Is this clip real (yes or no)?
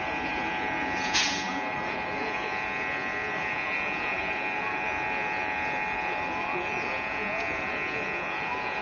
no